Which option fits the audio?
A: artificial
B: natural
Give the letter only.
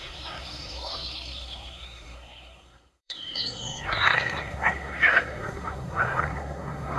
A